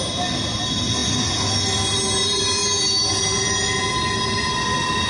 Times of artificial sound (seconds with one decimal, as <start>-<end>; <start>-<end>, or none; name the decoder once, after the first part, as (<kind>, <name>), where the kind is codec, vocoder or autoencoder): none